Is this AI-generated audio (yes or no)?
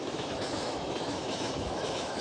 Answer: yes